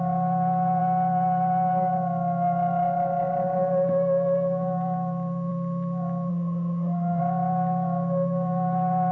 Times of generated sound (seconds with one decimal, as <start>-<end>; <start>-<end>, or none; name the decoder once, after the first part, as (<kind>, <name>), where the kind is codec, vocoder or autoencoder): 6.3-7.2 (autoencoder, DAC-VAE)